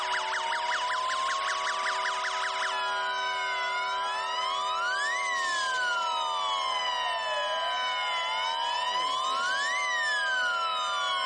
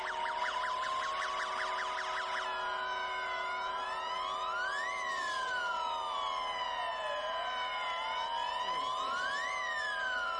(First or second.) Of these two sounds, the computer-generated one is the second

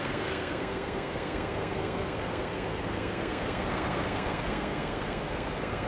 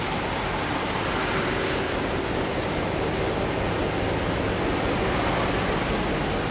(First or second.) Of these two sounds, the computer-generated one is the first